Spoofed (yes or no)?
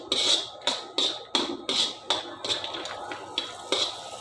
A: no